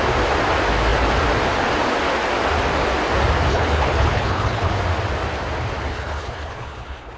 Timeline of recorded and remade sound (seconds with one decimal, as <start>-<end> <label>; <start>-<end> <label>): 0.0-3.5 recorded; 3.5-4.7 remade; 4.7-5.9 recorded; 5.9-7.2 remade